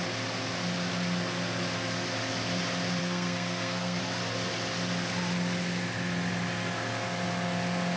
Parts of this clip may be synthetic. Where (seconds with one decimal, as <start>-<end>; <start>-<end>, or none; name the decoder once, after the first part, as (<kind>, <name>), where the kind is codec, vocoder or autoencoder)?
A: 3.0-4.0 (codec, SNAC)